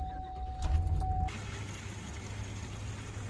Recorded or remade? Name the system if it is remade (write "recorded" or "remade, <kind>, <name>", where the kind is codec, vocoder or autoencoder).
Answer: recorded